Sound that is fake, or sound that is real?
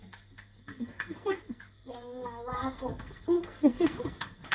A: fake